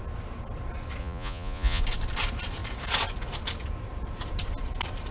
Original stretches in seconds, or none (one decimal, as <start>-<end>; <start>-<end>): 0.0-1.0; 1.8-5.1